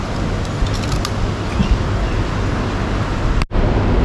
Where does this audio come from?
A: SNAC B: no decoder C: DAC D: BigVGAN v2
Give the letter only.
B